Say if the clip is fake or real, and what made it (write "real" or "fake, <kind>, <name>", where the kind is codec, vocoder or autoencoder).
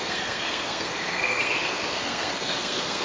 fake, codec, SNAC